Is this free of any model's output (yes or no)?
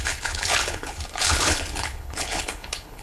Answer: no